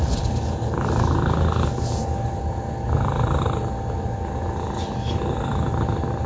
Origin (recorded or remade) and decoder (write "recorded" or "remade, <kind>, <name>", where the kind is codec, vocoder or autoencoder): recorded